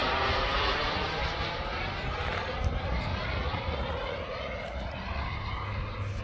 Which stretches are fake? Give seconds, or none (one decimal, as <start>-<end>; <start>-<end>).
3.1-5.3